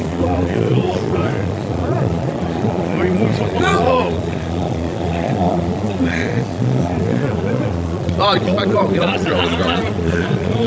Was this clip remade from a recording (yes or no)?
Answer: yes